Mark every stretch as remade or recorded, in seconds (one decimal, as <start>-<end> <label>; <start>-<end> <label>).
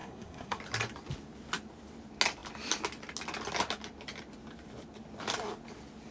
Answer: 0.0-0.6 remade; 0.6-6.1 recorded